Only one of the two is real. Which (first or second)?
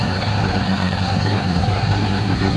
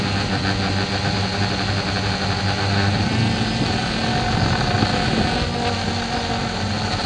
second